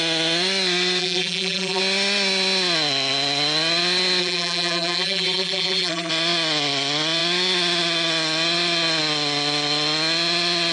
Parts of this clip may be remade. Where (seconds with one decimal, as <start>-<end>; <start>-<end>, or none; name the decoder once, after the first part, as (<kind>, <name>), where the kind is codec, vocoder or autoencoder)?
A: 1.0-1.8 (vocoder, BigVGAN v2); 4.2-6.1

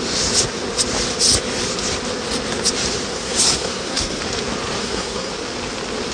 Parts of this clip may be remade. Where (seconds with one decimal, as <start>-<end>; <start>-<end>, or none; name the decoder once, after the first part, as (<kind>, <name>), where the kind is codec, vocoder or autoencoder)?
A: 3.1-4.2 (codec, SNAC); 4.8-5.3

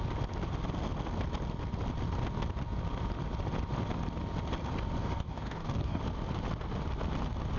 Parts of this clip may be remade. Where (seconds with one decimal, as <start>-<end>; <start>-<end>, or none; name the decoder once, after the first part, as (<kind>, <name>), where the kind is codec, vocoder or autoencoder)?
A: 5.0-6.0 (codec, DAC)

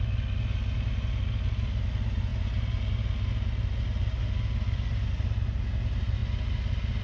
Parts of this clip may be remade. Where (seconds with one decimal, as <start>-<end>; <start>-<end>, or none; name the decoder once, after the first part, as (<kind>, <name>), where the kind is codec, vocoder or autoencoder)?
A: none

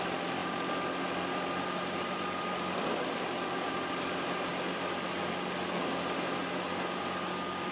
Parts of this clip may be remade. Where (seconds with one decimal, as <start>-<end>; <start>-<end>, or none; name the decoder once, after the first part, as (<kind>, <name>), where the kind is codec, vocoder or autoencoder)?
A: none

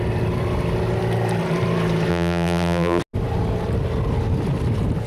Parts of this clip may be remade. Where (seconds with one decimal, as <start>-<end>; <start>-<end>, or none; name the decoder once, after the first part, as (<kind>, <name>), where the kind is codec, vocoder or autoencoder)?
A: 2.1-3.0 (vocoder, BigVGAN v2)